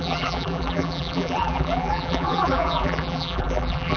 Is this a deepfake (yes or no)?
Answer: yes